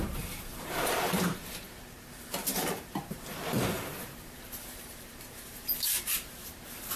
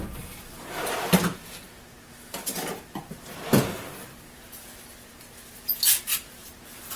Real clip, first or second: second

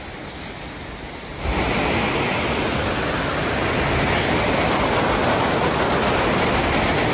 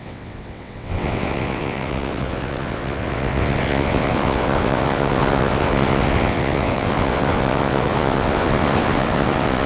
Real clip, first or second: first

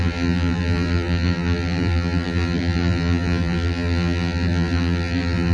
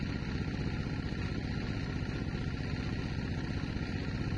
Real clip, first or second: second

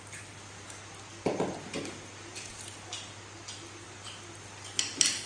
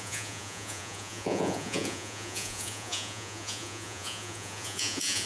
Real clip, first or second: first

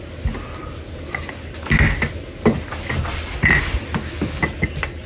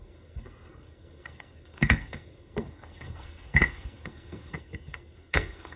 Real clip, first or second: first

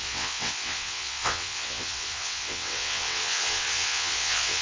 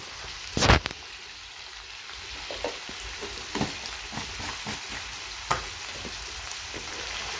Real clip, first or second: second